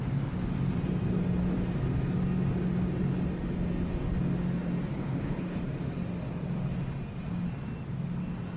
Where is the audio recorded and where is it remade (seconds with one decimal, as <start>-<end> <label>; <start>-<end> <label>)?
0.0-4.9 recorded; 4.9-5.6 remade; 5.6-8.6 recorded